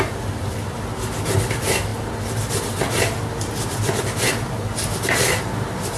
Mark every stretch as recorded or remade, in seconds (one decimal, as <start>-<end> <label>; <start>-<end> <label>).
0.0-6.0 recorded